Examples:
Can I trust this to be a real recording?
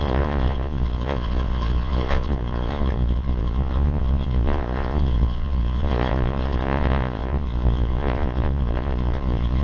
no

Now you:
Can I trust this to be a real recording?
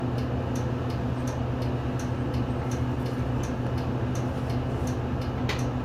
yes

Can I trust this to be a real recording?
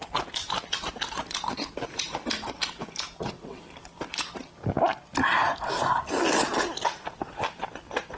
yes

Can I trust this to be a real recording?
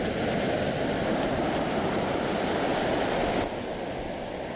yes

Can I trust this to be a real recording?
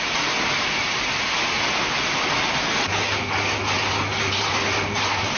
yes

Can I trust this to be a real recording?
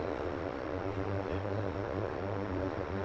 no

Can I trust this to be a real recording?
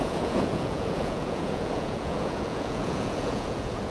no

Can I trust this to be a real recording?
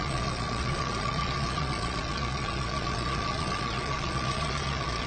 no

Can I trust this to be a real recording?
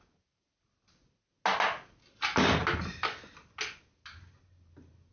yes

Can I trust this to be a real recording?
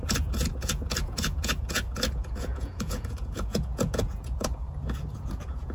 no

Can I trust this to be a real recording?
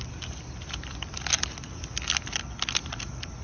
yes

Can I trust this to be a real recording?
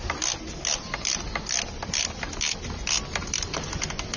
yes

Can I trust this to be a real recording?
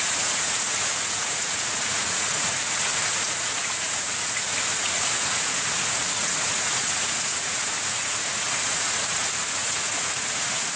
no